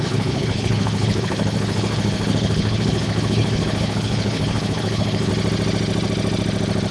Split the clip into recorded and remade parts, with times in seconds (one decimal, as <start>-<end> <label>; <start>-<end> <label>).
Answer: 0.0-5.3 remade; 5.3-6.9 recorded